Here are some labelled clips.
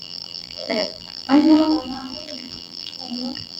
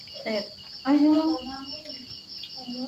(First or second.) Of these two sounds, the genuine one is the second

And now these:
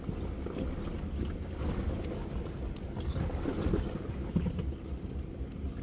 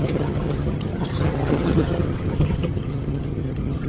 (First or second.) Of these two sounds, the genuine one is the first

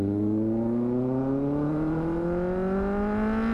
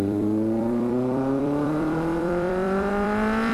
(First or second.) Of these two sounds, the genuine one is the first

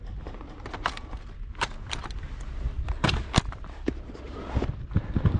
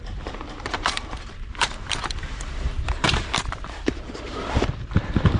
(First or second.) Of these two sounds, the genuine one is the first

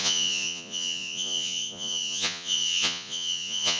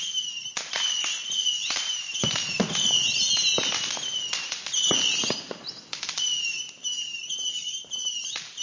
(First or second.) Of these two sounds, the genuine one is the second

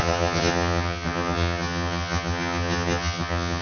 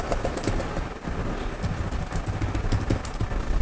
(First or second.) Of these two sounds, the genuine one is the second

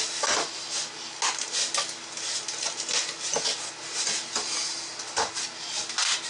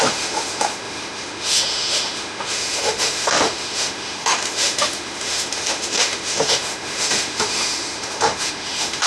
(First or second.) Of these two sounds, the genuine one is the first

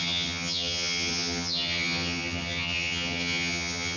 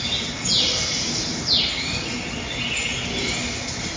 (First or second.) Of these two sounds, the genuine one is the second